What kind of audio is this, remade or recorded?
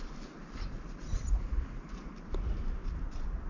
recorded